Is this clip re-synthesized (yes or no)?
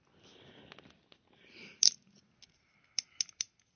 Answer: no